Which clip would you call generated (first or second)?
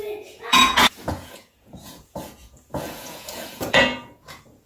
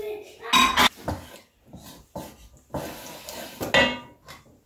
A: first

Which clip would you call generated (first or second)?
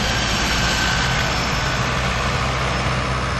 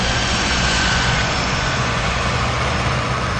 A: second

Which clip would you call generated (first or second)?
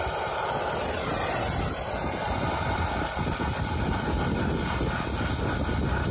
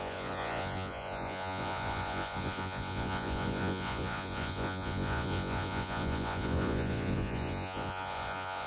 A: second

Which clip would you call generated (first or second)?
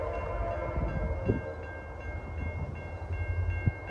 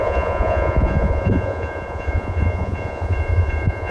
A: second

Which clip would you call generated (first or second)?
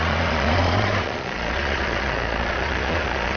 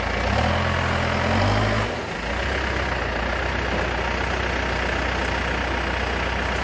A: first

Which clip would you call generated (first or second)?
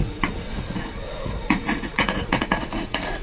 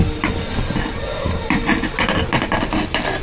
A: first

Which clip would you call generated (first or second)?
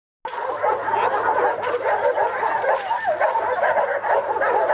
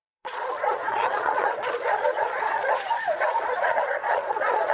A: second